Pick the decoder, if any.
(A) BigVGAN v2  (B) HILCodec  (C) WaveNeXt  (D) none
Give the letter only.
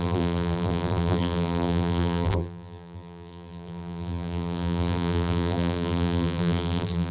A